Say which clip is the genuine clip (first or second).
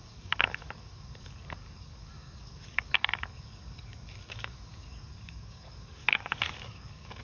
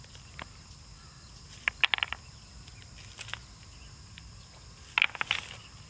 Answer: second